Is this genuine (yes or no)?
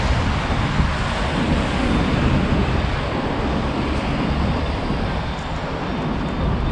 yes